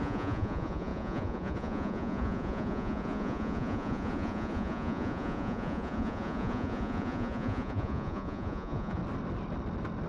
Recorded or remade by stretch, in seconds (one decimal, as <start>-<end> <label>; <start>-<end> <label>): 0.0-9.0 remade; 9.0-10.1 recorded